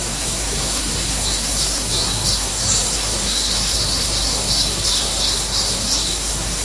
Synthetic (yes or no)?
yes